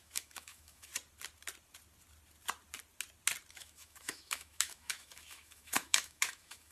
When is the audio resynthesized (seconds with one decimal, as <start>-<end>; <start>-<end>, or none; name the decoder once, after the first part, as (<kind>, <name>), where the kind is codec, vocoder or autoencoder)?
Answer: 0.0-0.9 (autoencoder, DAC-VAE); 3.5-6.7